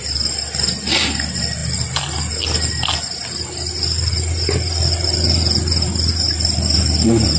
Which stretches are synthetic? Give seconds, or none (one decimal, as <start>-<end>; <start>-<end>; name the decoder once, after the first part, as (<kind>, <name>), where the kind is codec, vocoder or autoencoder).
none